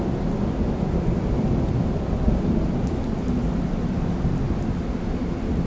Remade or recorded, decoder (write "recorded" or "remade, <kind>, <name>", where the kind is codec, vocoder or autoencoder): recorded